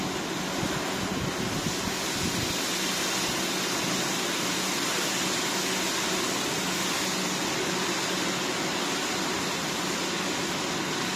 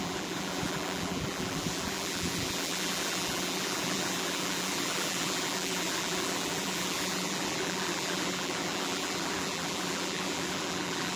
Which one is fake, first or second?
second